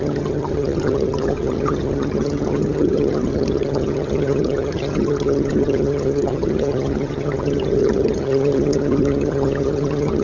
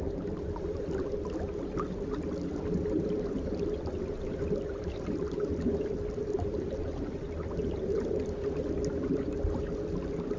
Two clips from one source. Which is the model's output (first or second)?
first